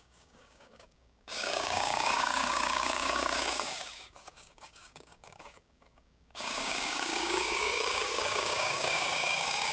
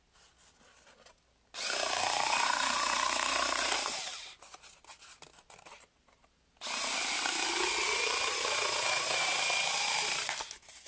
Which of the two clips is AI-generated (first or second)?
first